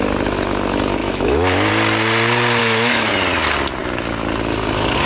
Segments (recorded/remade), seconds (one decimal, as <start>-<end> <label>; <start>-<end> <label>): 0.0-1.0 recorded; 1.0-1.7 remade; 1.7-2.6 recorded; 2.6-3.1 remade; 3.1-5.1 recorded